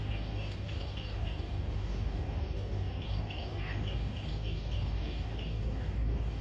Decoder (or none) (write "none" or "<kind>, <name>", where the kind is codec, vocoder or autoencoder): codec, DAC